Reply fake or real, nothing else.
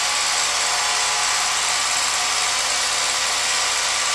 real